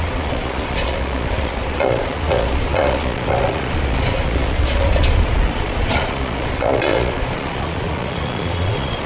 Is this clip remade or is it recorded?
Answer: remade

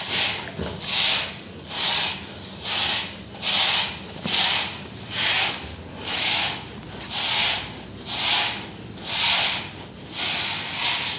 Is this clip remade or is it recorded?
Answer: recorded